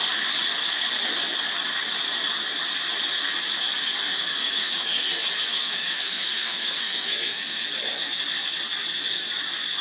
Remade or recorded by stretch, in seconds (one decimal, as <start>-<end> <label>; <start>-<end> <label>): 0.0-4.0 recorded; 4.0-5.1 remade; 5.1-5.5 recorded; 5.5-7.6 remade; 7.6-9.8 recorded